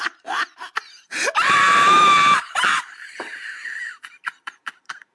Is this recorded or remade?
remade